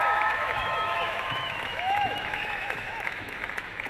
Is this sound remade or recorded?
remade